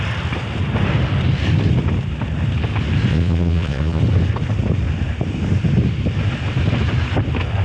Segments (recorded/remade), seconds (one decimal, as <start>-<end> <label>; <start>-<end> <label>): 0.0-3.1 recorded; 3.1-4.0 remade; 4.0-7.6 recorded